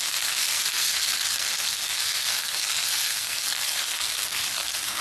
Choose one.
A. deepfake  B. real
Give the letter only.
A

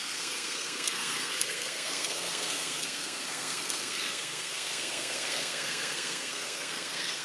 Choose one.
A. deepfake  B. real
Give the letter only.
A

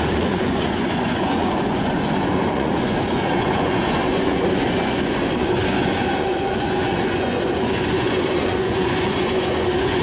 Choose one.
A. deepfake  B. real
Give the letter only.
A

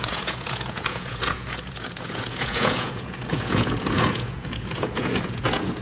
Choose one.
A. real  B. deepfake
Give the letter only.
B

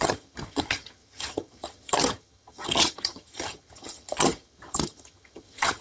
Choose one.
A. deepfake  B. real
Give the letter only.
A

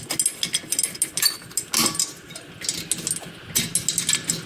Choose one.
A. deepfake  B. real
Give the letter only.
B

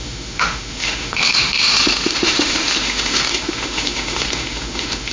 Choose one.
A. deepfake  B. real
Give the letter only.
A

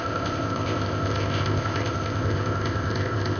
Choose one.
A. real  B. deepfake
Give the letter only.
B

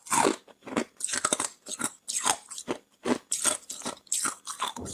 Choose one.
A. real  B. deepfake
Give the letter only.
A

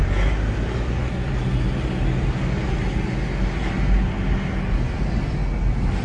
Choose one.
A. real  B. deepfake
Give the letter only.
A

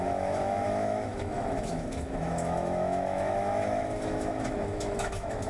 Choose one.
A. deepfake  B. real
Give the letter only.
A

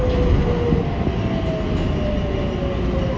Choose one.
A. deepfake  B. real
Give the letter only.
B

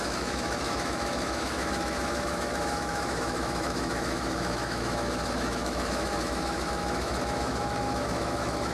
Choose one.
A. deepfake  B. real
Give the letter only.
A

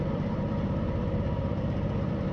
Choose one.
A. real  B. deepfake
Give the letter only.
B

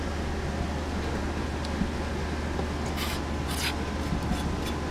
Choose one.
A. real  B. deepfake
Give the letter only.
A